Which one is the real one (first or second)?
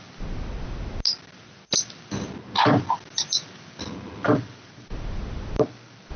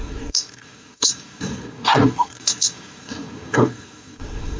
first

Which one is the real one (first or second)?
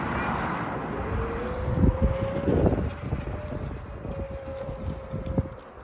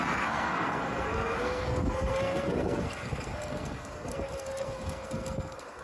first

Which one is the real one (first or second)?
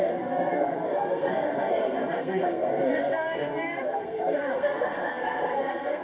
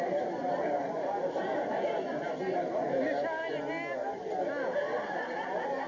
second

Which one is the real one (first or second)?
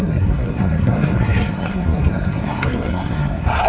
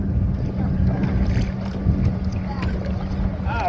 second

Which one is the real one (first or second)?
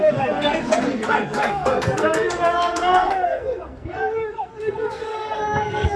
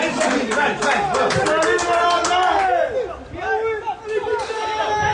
second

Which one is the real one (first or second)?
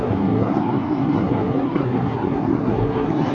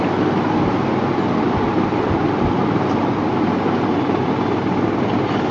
second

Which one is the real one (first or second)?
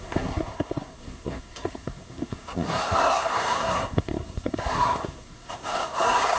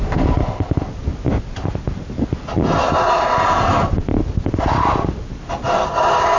second